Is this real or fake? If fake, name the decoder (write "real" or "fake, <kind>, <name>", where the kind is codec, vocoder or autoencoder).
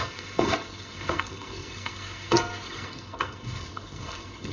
fake, codec, SNAC